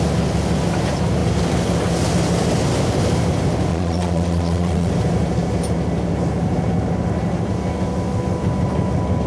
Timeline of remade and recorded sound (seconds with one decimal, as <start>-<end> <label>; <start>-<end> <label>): 0.0-3.7 recorded; 3.7-4.9 remade; 4.9-9.3 recorded